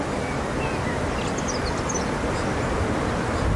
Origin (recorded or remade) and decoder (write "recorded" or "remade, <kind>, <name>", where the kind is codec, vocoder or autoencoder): recorded